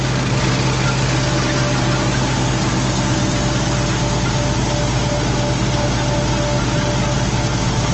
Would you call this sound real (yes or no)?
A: yes